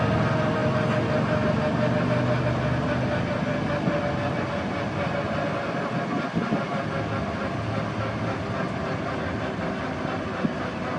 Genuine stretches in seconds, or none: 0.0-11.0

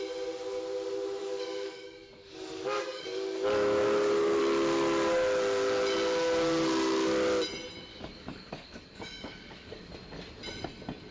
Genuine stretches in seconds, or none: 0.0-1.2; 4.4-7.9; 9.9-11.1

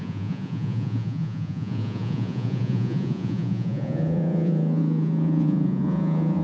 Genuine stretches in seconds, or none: none

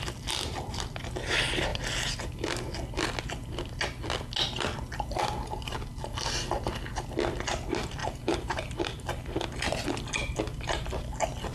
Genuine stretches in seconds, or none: 0.0-8.0; 9.1-10.5; 11.0-11.5

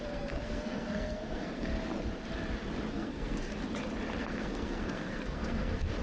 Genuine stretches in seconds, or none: 1.7-2.9; 3.5-4.2